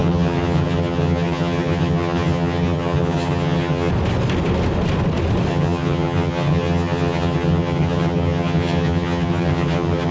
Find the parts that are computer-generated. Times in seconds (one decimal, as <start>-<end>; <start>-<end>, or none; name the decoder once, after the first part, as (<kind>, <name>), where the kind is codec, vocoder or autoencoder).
0.0-3.9 (vocoder, HiFi-GAN); 5.5-10.1